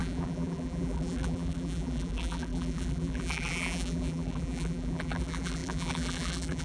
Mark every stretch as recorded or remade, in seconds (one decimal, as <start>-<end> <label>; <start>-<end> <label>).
0.0-6.6 remade